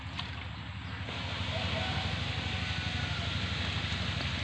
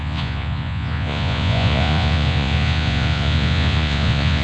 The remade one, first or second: second